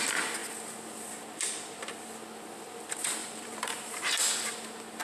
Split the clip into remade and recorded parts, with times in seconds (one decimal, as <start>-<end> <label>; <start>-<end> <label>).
0.0-3.2 recorded; 3.2-4.3 remade; 4.3-5.0 recorded